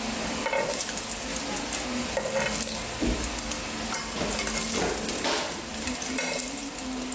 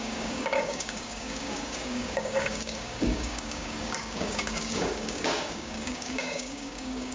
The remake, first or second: second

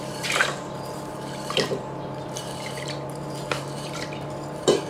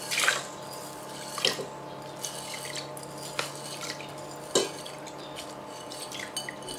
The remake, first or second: first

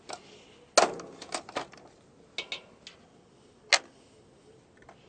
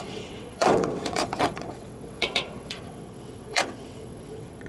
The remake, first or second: second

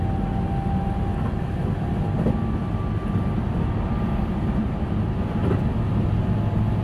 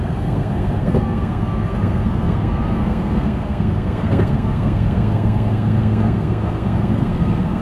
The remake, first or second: second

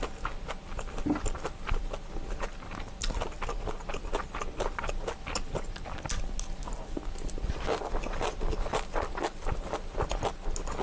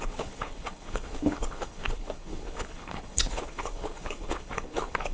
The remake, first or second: second